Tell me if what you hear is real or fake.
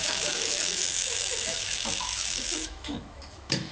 fake